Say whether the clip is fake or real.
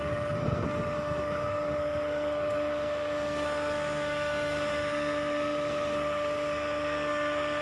fake